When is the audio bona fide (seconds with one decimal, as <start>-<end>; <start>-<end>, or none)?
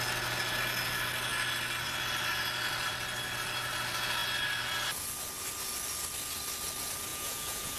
0.0-7.1